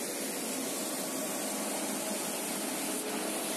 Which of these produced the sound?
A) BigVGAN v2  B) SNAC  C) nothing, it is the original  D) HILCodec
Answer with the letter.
C